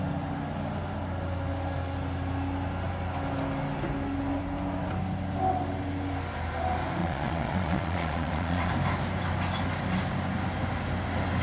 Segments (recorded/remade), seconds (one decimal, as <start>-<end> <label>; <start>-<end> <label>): 0.0-7.0 recorded; 7.0-8.7 remade; 8.7-11.4 recorded